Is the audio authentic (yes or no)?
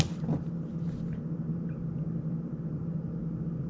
yes